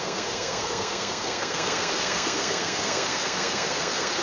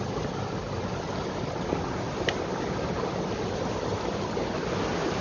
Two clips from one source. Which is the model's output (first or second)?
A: first